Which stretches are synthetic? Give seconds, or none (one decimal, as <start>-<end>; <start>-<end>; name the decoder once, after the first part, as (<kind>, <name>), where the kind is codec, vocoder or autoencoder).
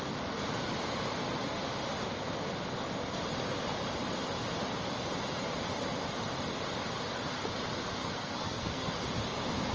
8.0-8.9 (codec, SNAC)